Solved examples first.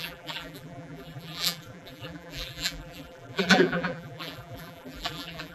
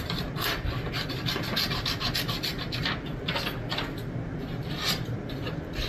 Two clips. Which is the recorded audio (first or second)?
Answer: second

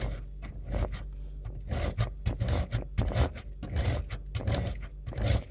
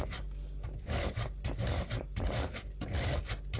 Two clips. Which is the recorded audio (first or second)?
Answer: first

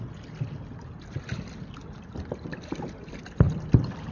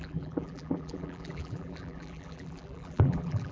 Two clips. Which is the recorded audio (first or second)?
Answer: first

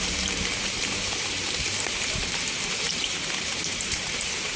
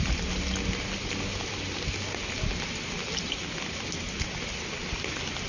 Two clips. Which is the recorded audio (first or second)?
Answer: second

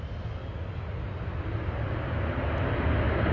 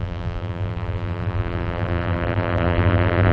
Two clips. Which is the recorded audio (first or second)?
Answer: first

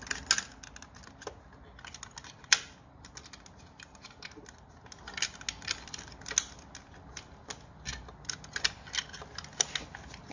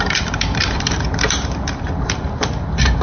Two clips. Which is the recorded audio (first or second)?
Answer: first